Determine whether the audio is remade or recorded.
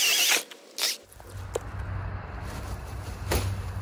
recorded